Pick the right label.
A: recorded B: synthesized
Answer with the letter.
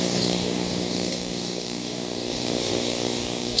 B